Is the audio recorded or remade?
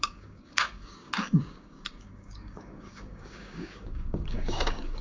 remade